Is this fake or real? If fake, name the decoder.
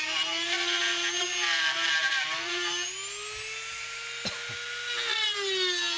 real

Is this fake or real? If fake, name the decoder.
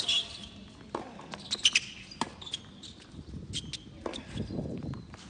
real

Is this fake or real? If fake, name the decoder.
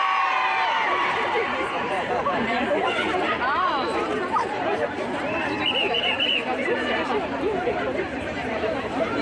fake, vocoder, BigVGAN v2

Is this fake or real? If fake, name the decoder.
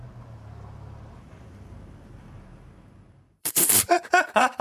fake, vocoder, BigVGAN v2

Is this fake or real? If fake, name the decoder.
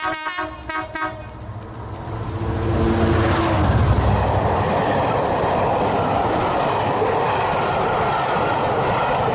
real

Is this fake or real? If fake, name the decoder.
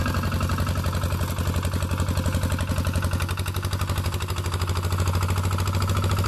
real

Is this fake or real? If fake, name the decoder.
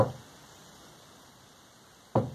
real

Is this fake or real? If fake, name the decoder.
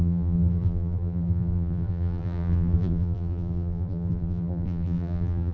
fake, vocoder, BigVGAN v2